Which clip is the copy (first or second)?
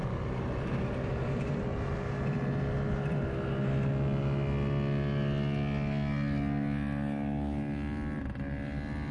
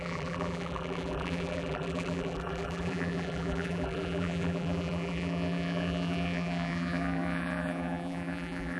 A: second